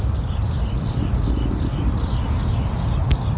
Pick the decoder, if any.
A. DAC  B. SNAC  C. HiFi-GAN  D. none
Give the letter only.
D